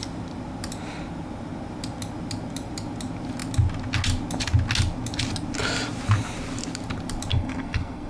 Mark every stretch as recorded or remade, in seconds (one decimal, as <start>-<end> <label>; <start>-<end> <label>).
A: 0.0-7.3 recorded; 7.3-8.1 remade